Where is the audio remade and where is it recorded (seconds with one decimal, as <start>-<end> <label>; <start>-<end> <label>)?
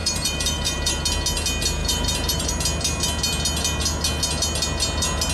0.0-1.0 remade; 1.0-1.8 recorded; 1.8-2.5 remade; 2.5-5.3 recorded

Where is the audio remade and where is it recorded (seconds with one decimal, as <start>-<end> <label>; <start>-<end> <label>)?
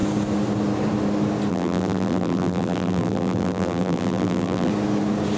0.0-1.5 recorded; 1.5-4.7 remade; 4.7-5.4 recorded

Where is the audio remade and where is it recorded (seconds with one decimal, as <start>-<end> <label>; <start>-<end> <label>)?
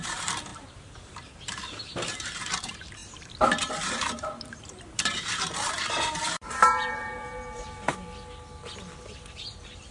0.0-7.9 remade; 7.9-9.4 recorded; 9.4-9.9 remade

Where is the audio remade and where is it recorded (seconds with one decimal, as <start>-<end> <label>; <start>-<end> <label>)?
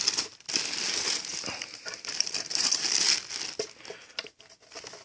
0.0-0.9 recorded; 0.9-2.8 remade; 2.8-5.0 recorded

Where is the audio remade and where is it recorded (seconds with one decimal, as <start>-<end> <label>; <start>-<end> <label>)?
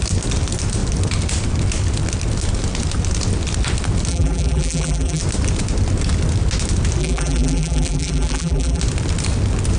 0.0-4.1 recorded; 4.1-5.2 remade; 5.2-7.0 recorded; 7.0-8.8 remade; 8.8-9.8 recorded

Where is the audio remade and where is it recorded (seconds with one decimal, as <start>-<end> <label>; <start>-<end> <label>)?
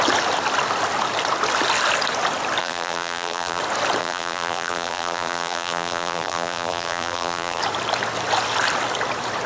0.0-2.6 recorded; 2.6-3.6 remade; 3.6-4.0 recorded; 4.0-7.6 remade; 7.6-9.5 recorded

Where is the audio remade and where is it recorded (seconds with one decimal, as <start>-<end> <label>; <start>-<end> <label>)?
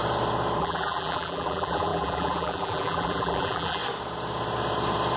0.0-0.6 recorded; 0.6-3.8 remade; 3.8-5.2 recorded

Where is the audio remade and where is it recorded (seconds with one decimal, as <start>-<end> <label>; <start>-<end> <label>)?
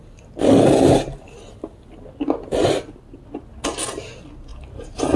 0.0-3.1 remade; 3.1-4.5 recorded; 4.5-5.2 remade